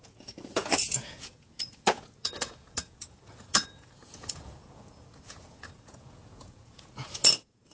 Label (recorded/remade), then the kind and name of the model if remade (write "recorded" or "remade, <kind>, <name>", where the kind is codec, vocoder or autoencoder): remade, vocoder, Vocos